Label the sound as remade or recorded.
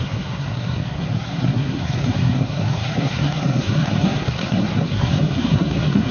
remade